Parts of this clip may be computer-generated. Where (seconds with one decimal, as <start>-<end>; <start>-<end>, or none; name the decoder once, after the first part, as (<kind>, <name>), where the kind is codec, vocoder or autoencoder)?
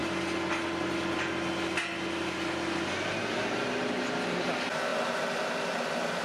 none